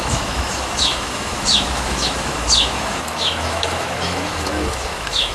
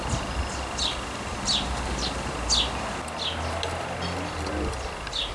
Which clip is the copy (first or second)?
first